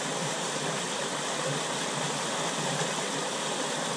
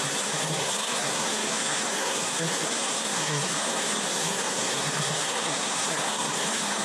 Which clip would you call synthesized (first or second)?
second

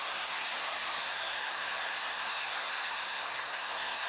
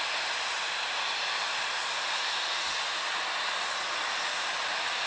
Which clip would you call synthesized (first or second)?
first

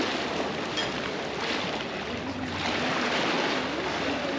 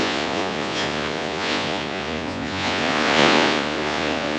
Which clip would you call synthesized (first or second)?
second